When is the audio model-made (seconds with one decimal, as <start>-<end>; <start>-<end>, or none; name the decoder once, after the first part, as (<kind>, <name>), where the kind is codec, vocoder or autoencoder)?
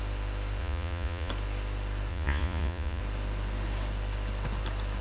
0.6-1.3 (vocoder, Vocos); 2.1-3.0